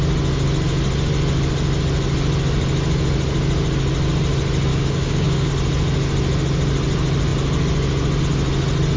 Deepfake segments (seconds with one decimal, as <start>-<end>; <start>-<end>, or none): 4.7-5.5